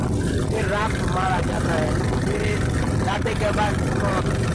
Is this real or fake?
real